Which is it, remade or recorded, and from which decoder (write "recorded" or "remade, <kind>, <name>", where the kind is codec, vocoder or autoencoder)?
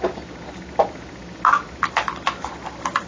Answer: recorded